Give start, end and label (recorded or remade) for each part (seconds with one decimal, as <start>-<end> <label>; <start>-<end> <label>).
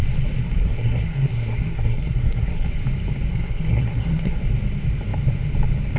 0.0-0.4 recorded; 0.4-2.7 remade; 2.7-3.3 recorded; 3.3-4.4 remade; 4.4-6.0 recorded